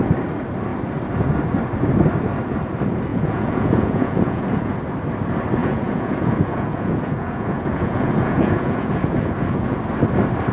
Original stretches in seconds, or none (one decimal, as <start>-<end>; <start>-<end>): 0.0-3.1; 4.7-5.6; 9.8-10.5

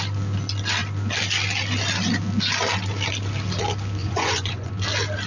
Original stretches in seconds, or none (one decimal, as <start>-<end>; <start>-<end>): 0.0-4.0; 4.7-5.3

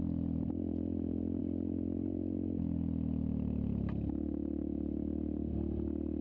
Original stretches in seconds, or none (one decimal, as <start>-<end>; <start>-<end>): 0.0-6.2